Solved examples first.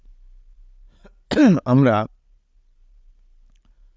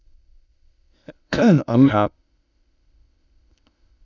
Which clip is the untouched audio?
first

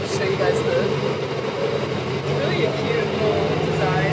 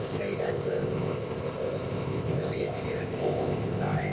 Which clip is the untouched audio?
first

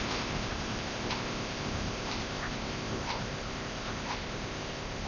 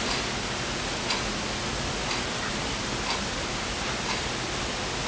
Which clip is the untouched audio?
second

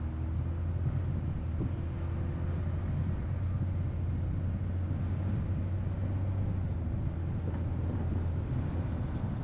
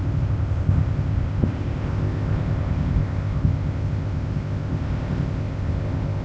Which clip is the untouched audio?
first